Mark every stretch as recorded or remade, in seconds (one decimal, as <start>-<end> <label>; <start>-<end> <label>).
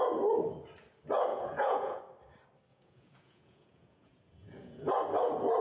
0.0-1.3 recorded; 1.3-2.0 remade; 2.0-2.7 recorded; 2.7-4.9 remade; 4.9-5.6 recorded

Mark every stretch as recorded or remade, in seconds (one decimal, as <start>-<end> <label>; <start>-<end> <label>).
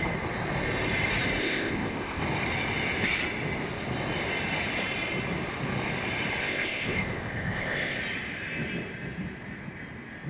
0.0-1.4 recorded; 1.4-2.2 remade; 2.2-6.4 recorded; 6.4-8.0 remade; 8.0-10.3 recorded